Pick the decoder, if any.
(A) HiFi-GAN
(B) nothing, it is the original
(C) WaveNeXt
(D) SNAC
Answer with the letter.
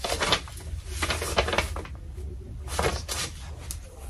B